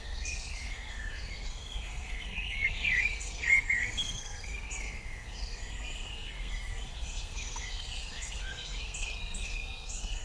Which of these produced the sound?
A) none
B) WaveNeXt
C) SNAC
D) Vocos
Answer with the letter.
C